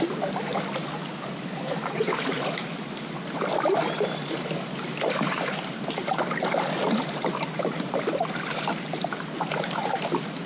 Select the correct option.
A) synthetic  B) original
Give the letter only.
B